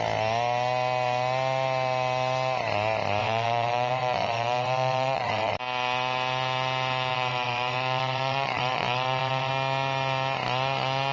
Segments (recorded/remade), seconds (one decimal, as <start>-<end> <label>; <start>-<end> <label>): 0.0-3.2 recorded; 3.2-5.5 remade; 5.5-7.1 recorded; 7.1-9.5 remade; 9.5-11.1 recorded